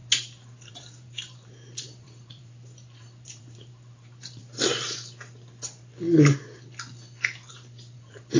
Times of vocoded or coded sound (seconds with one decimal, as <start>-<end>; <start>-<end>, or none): 0.7-4.4; 7.5-8.4